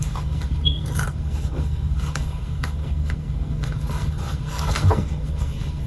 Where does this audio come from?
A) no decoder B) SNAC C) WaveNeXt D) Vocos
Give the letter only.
B